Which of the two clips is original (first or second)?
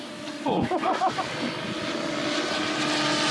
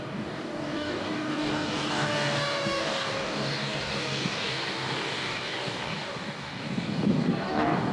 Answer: first